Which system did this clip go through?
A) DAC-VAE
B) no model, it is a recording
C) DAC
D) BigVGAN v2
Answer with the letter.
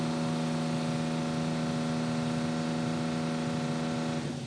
B